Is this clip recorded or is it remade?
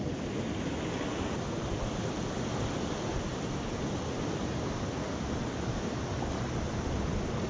recorded